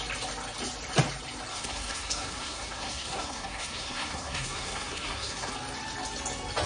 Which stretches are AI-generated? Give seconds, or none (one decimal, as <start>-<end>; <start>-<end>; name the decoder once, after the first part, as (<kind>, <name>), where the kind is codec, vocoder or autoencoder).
1.5-5.5 (codec, SNAC)